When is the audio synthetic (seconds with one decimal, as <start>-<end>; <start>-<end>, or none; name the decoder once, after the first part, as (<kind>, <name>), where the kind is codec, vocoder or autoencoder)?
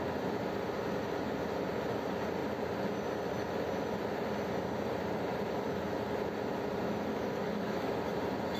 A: 7.1-7.9 (codec, DAC)